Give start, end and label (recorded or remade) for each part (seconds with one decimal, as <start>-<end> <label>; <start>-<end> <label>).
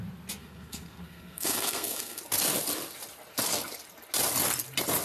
0.0-0.4 recorded; 0.4-2.2 remade; 2.2-5.0 recorded